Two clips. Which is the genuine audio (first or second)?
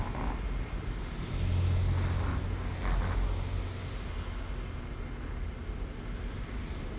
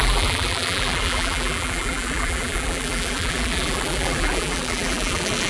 first